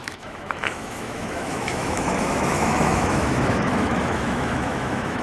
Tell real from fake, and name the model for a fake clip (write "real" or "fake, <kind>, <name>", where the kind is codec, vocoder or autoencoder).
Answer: fake, autoencoder, DAC-VAE